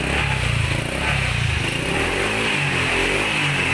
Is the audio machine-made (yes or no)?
no